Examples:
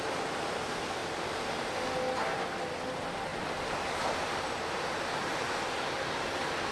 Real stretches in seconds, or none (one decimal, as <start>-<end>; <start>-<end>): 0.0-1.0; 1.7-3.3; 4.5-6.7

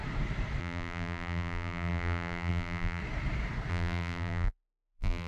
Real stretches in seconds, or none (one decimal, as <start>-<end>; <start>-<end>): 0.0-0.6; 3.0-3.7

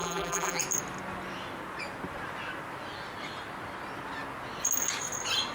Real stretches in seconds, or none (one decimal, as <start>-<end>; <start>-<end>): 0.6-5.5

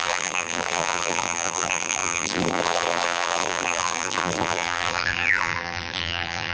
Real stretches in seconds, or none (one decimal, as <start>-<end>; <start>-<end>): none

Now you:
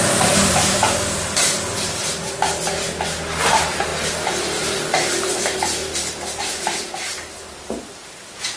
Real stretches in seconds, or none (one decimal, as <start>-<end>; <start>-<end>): 2.0-3.5; 3.9-5.1; 5.8-6.4

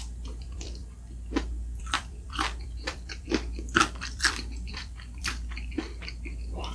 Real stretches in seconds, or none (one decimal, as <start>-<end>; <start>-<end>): 0.8-1.8